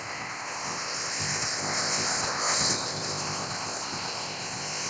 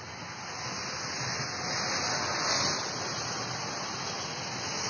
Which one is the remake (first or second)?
first